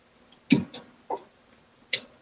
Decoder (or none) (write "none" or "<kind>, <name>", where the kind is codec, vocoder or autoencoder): none